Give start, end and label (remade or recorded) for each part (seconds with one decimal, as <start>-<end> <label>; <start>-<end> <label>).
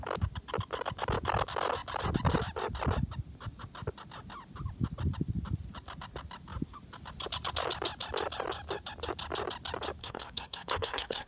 0.0-10.0 recorded; 10.0-11.3 remade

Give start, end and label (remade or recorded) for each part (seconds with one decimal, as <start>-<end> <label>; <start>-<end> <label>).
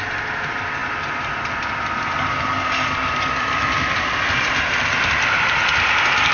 0.0-6.3 recorded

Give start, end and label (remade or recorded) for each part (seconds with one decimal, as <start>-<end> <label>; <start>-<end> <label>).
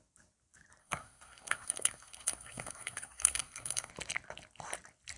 0.0-0.8 recorded; 0.8-3.9 remade; 3.9-5.2 recorded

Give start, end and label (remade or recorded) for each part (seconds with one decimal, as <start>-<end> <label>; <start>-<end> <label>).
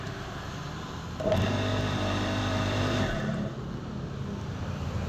0.0-1.7 recorded; 1.7-3.6 remade; 3.6-5.1 recorded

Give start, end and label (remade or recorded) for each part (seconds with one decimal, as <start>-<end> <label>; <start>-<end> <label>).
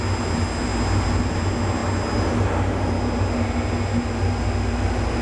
0.0-5.2 recorded